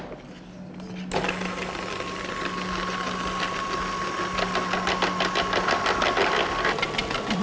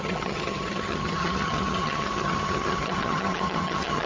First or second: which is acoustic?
first